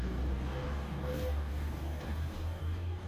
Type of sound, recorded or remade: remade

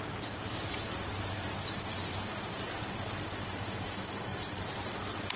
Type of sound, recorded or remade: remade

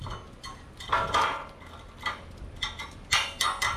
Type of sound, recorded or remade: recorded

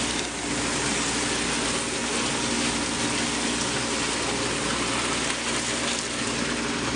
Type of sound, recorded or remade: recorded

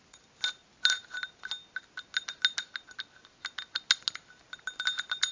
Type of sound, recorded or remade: recorded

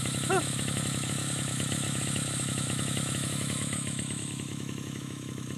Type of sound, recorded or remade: remade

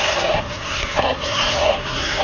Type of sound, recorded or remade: remade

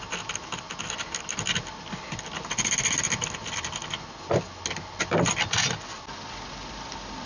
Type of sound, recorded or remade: recorded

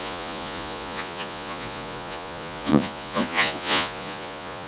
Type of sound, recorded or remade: remade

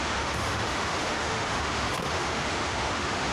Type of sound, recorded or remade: remade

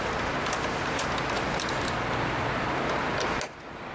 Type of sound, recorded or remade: recorded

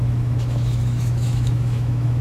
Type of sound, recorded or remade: remade